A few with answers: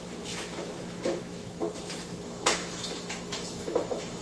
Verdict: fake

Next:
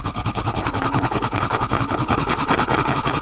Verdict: fake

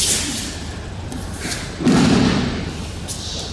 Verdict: real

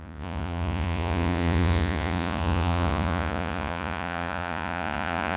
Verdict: fake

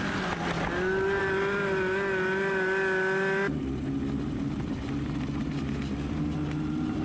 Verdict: real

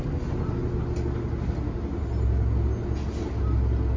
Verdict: real